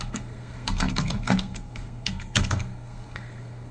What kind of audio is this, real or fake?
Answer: fake